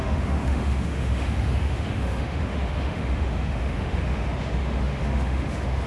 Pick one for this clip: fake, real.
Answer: fake